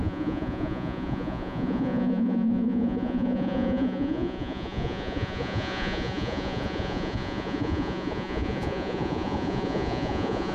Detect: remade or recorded remade